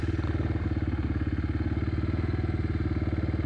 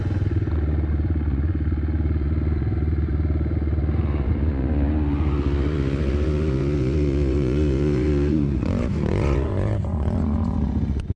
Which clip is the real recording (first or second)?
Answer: first